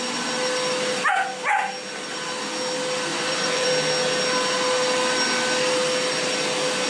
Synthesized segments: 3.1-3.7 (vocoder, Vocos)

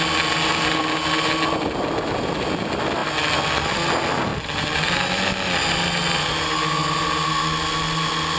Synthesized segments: none

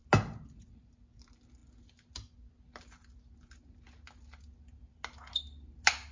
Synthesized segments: none

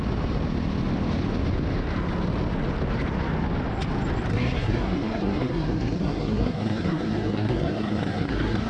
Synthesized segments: 4.3-8.7 (codec, SNAC)

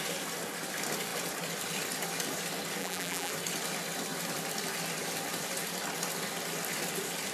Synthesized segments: 2.8-3.3 (vocoder, BigVGAN v2)

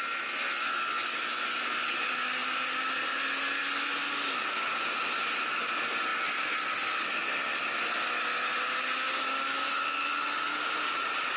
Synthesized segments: none